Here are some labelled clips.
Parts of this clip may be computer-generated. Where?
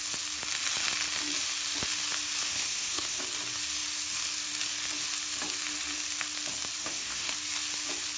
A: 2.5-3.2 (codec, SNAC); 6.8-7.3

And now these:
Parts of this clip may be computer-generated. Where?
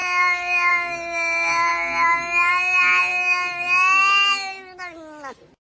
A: none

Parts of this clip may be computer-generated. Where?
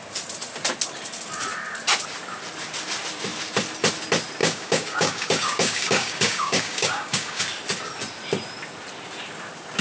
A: 4.4-7.4 (codec, DAC)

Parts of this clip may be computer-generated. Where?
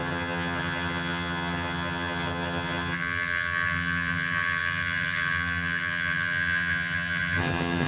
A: 0.0-7.9 (vocoder, HiFi-GAN)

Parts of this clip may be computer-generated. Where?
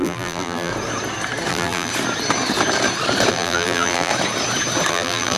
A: 0.0-0.7 (vocoder, BigVGAN v2); 1.5-1.9; 3.3-4.1; 4.9-5.4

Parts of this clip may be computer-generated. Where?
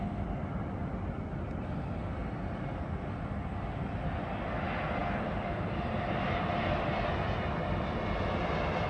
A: 2.2-3.2 (vocoder, BigVGAN v2); 5.0-6.5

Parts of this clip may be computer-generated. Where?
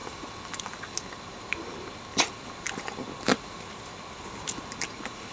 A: none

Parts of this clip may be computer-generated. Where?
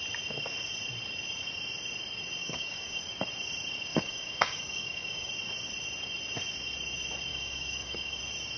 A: 2.4-3.0 (codec, DAC); 3.9-5.3; 7.3-8.2